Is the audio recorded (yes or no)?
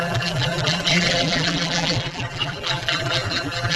no